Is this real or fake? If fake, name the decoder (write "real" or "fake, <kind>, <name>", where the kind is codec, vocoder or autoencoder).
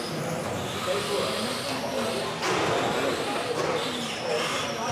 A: real